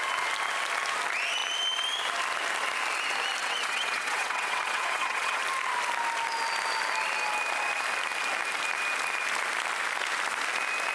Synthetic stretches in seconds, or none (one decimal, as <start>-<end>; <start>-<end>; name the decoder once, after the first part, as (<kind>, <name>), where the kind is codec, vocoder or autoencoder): 3.4-5.4 (vocoder, WaveNeXt)